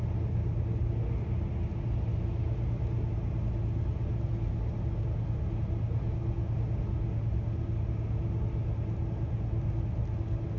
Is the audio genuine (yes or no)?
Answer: yes